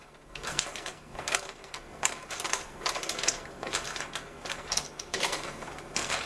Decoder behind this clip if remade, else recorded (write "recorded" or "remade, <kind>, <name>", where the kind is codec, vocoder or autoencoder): remade, codec, SNAC